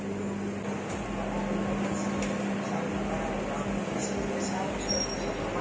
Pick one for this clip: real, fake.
real